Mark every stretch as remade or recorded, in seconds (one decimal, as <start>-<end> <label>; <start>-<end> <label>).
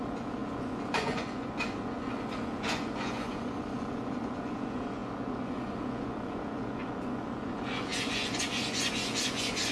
0.0-9.7 remade